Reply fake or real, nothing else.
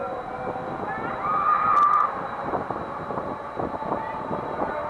real